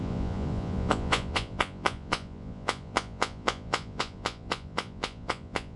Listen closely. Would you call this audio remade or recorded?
remade